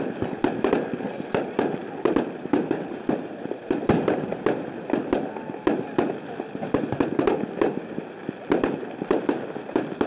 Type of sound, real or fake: real